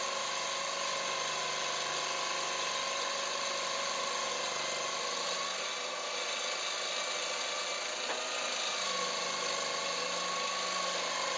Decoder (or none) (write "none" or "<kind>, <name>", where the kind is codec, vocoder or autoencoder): none